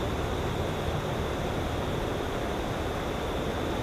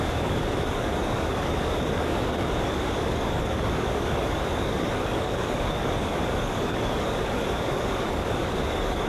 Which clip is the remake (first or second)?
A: second